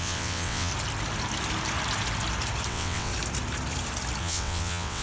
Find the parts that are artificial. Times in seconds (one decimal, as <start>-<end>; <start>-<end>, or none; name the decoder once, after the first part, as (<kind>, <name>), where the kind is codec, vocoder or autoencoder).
0.0-0.7 (vocoder, WaveNeXt); 2.7-3.1; 4.2-5.0